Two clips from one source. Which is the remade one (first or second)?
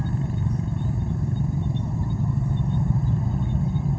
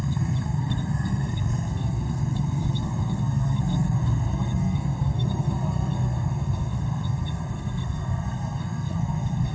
second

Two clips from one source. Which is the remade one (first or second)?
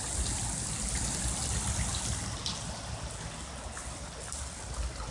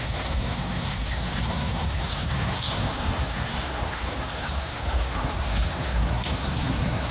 second